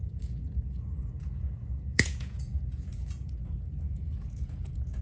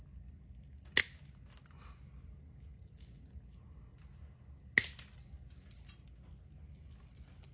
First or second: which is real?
second